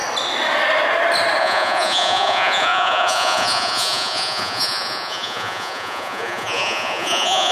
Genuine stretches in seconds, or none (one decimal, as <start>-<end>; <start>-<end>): 0.0-1.4